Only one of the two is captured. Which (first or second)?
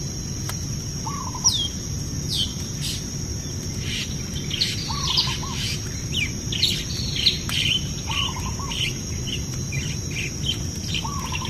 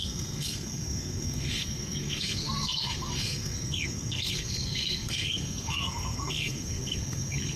first